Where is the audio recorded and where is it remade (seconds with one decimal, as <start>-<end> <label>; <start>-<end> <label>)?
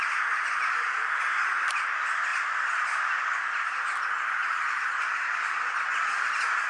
0.0-1.1 remade; 1.1-2.3 recorded; 2.3-3.4 remade; 3.4-4.4 recorded; 4.4-5.1 remade; 5.1-6.7 recorded